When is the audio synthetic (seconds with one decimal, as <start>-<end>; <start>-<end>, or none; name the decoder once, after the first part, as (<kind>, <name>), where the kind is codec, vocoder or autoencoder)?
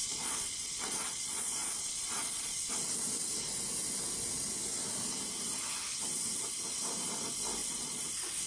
0.0-2.7 (vocoder, Vocos); 7.6-8.5